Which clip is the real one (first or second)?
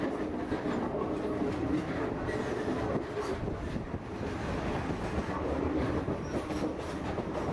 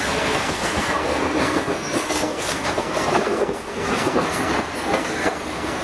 first